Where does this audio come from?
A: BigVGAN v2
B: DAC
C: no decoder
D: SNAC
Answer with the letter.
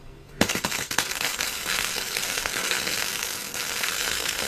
D